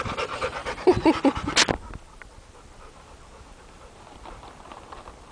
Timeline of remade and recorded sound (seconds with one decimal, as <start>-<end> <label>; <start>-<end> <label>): 0.0-5.3 recorded